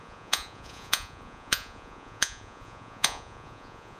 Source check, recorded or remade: remade